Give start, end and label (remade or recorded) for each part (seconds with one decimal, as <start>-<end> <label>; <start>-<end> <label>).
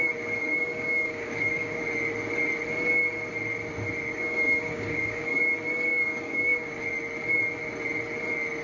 0.0-0.4 recorded; 0.4-1.8 remade; 1.8-4.1 recorded; 4.1-5.4 remade; 5.4-5.9 recorded; 5.9-6.8 remade; 6.8-8.6 recorded